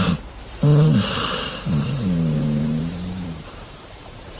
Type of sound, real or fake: fake